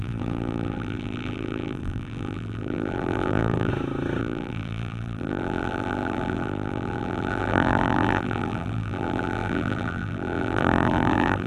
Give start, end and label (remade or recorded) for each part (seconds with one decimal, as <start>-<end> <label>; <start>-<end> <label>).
0.0-3.7 remade; 3.7-4.2 recorded; 4.2-11.5 remade